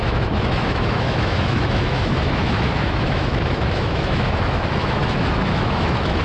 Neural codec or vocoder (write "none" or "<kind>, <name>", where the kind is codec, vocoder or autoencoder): autoencoder, DAC-VAE